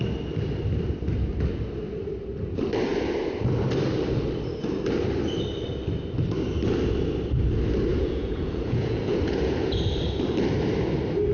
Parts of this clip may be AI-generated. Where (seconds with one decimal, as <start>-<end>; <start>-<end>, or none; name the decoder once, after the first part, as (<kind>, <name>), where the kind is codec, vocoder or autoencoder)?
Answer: 7.9-9.8 (vocoder, Vocos)